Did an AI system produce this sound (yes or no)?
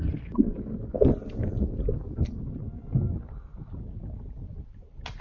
no